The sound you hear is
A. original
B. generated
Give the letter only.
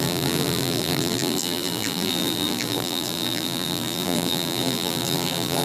B